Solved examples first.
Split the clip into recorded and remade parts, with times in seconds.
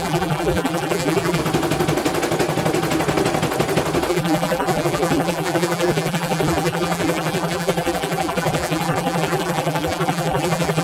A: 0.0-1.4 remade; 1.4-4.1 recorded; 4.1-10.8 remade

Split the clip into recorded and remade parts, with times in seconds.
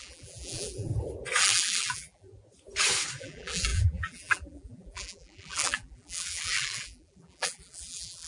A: 0.0-0.9 remade; 0.9-1.4 recorded; 1.4-2.3 remade; 2.3-3.2 recorded; 3.2-8.3 remade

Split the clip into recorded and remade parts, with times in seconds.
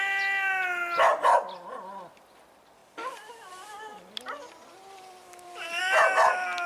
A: 0.0-2.8 recorded; 2.8-3.3 remade; 3.3-3.9 recorded; 3.9-5.8 remade; 5.8-6.7 recorded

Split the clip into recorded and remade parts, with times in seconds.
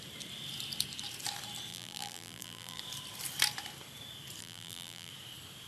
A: 0.0-1.7 recorded; 1.7-2.8 remade; 2.8-4.4 recorded; 4.4-5.1 remade; 5.1-5.7 recorded